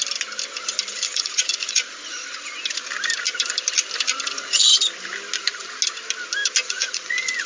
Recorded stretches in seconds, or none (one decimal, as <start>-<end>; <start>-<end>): 0.0-0.9; 2.2-4.3; 4.7-6.7